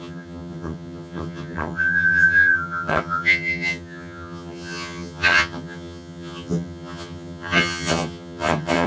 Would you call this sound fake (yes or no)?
yes